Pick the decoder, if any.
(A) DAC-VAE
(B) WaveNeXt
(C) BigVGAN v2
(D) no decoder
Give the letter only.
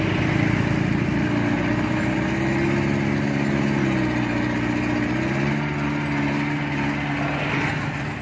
D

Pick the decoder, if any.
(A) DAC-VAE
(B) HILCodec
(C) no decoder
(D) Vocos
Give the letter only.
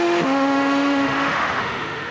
A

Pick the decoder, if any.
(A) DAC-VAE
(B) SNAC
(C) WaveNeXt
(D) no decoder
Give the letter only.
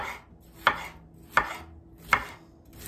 D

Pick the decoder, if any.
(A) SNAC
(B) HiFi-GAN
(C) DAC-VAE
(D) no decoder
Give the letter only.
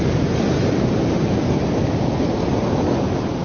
D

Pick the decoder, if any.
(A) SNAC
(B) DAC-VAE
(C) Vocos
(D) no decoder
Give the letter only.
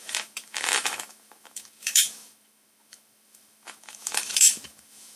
B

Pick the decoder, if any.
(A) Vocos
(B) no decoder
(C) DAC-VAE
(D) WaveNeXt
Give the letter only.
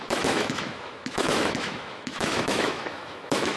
C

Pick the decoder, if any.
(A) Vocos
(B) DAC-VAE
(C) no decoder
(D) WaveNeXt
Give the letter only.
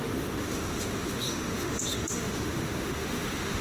B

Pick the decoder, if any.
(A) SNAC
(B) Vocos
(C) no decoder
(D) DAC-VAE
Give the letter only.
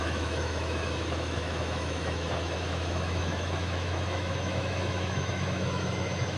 D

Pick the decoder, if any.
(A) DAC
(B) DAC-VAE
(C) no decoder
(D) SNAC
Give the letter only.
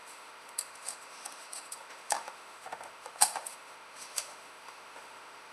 B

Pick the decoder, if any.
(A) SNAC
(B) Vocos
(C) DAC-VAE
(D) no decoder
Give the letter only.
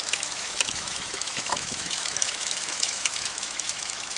C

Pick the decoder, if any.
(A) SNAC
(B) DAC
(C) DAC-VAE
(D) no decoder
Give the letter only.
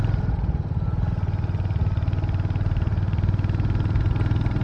D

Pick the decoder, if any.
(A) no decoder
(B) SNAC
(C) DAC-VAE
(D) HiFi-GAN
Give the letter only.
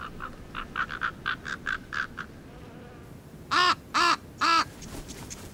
A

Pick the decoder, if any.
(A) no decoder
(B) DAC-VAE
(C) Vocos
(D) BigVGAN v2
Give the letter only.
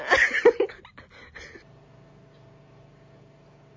A